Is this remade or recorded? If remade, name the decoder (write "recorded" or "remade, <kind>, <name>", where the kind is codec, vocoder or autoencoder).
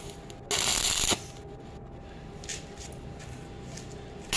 recorded